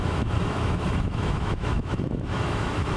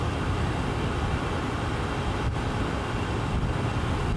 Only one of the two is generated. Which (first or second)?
first